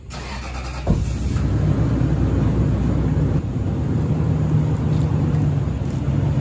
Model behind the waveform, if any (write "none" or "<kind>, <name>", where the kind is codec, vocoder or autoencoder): none